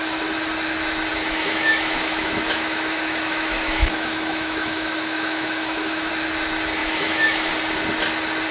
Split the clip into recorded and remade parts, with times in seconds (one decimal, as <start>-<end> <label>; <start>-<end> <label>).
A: 0.0-1.1 recorded; 1.1-6.1 remade; 6.1-6.8 recorded; 6.8-7.5 remade; 7.5-8.5 recorded